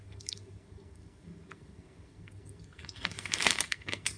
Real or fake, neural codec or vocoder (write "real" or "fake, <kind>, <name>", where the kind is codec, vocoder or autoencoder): fake, codec, SNAC